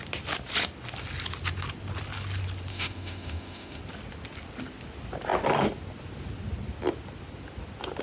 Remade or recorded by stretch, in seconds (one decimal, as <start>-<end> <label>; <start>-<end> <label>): 0.0-2.7 recorded; 2.7-3.8 remade; 3.8-8.0 recorded